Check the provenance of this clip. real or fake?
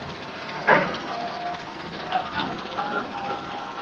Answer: fake